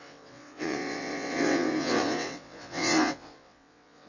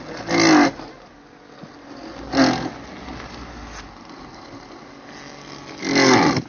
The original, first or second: second